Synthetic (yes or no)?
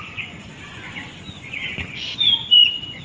yes